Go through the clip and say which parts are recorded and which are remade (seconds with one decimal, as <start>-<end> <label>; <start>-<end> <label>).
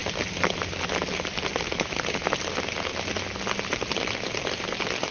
0.0-5.1 recorded